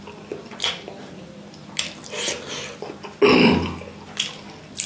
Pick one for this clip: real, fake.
real